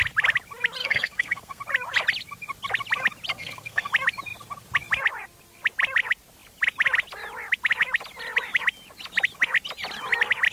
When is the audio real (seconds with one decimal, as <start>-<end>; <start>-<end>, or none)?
0.0-0.8; 1.6-3.3; 3.9-10.5